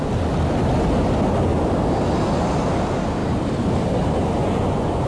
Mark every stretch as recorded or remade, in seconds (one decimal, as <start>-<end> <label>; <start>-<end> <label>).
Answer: 0.0-4.4 recorded; 4.4-5.1 remade